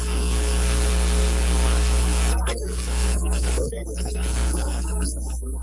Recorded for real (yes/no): no